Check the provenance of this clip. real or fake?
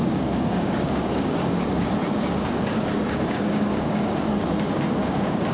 fake